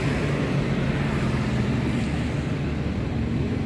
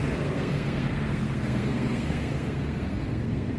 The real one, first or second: first